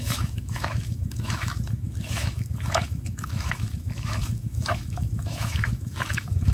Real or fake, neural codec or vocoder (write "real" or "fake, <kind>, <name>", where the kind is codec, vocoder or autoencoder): fake, autoencoder, DAC-VAE